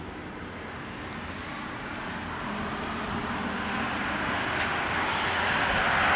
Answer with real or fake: real